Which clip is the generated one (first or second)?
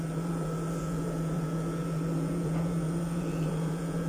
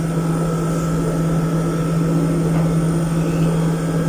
first